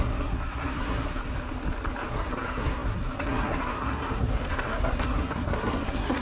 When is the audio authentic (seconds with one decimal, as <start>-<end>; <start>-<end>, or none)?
1.2-2.1